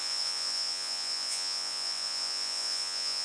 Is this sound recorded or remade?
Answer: remade